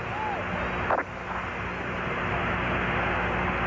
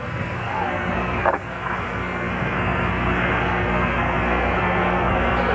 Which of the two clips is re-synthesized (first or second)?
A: second